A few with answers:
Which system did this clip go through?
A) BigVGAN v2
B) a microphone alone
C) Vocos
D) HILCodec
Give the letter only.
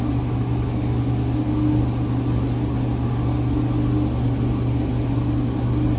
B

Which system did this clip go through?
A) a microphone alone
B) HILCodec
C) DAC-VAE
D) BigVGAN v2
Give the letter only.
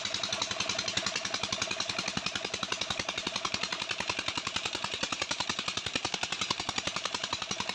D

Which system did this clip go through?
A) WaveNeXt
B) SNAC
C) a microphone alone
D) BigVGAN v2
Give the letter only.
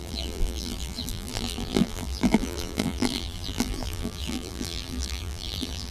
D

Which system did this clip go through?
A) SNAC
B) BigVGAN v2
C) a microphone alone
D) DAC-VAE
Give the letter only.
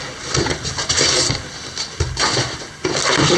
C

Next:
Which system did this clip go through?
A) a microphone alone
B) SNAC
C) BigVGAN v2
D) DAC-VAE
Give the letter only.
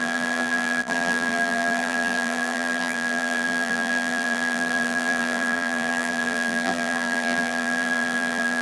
C